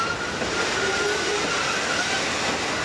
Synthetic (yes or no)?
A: no